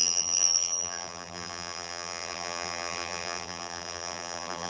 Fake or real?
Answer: fake